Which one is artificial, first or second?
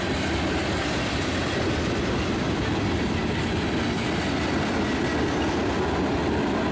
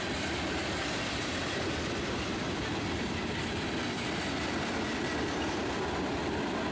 second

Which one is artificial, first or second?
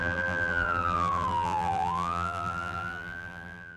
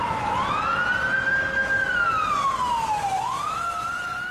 first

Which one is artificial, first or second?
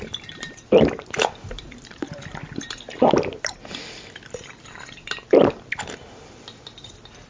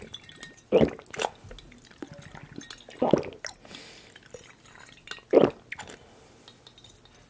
first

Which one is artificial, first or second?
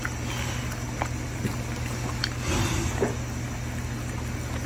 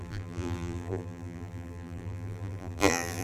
second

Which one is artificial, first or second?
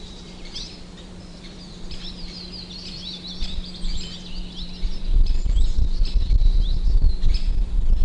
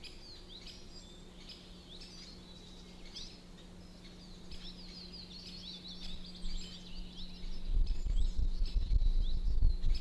first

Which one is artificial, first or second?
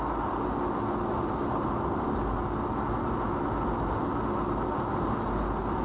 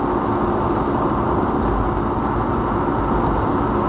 second